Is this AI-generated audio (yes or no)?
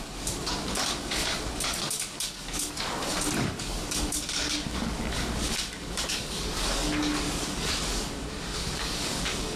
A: yes